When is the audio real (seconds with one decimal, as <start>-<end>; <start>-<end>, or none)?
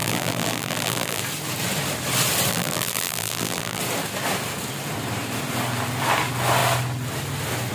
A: 1.2-2.5; 3.8-7.7